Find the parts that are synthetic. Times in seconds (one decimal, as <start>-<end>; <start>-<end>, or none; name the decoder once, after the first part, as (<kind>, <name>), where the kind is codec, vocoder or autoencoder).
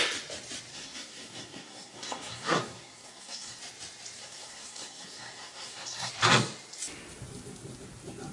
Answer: 0.7-3.6 (codec, SNAC); 4.2-6.1